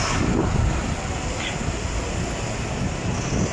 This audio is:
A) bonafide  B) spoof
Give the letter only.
A